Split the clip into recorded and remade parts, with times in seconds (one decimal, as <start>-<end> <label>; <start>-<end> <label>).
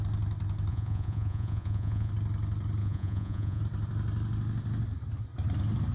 0.0-0.7 recorded; 0.7-2.1 remade; 2.1-2.8 recorded; 2.8-3.6 remade; 3.6-5.9 recorded